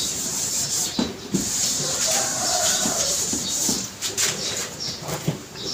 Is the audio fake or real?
fake